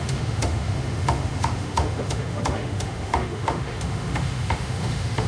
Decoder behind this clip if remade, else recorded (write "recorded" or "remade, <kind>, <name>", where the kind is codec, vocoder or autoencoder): remade, autoencoder, DAC-VAE